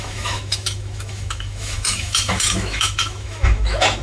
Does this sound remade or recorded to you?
remade